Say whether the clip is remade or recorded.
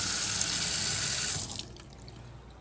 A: recorded